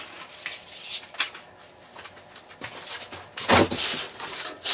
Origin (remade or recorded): recorded